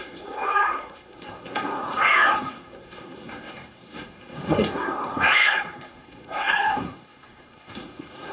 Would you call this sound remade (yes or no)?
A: yes